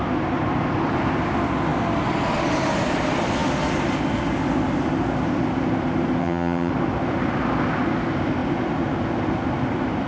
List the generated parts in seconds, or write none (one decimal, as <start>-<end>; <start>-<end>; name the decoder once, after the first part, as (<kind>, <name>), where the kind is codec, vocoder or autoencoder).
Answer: 6.2-6.7 (vocoder, HiFi-GAN)